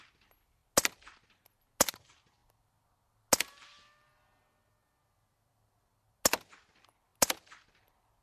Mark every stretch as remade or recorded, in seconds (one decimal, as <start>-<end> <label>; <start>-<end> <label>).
0.0-8.2 recorded